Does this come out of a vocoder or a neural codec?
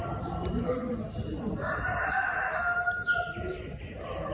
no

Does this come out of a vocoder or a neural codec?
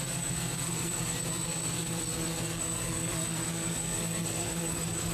yes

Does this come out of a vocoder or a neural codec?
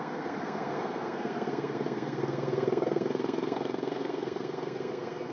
yes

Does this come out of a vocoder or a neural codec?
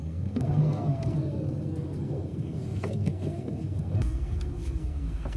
yes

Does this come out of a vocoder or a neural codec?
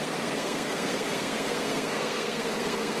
yes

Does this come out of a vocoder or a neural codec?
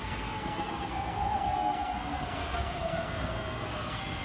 yes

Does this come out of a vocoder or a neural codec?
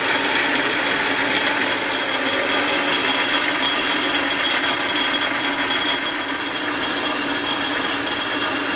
no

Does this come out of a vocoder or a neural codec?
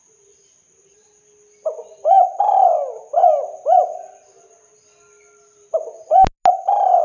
no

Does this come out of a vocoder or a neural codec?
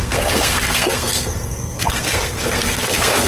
yes